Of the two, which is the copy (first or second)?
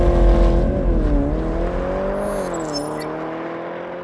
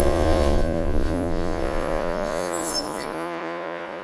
second